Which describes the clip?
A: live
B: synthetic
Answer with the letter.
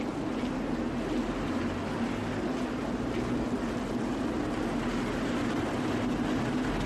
A